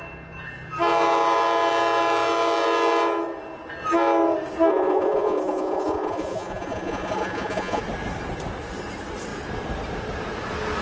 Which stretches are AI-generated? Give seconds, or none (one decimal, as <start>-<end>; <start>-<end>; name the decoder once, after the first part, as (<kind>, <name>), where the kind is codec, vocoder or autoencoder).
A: 4.7-7.8 (vocoder, Vocos)